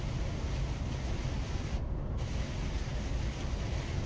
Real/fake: real